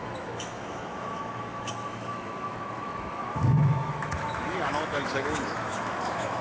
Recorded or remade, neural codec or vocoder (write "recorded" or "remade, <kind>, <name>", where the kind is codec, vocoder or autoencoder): remade, autoencoder, DAC-VAE